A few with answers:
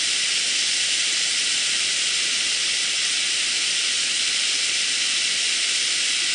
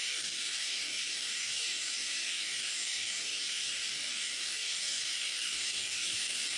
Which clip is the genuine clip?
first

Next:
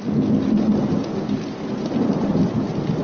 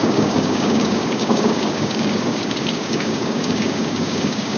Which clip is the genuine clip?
first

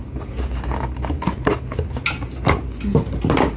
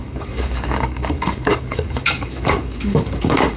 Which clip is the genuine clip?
first